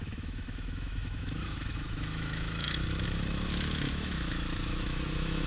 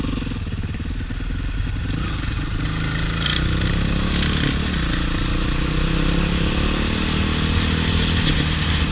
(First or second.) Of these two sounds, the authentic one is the second